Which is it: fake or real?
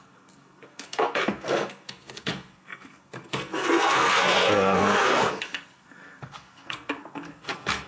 fake